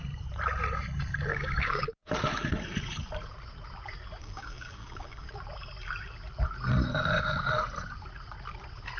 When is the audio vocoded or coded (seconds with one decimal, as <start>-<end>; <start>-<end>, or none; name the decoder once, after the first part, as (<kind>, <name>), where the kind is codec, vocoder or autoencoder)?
1.3-2.1 (codec, DAC); 4.2-5.3